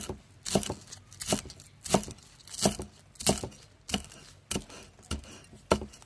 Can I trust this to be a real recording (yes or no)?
yes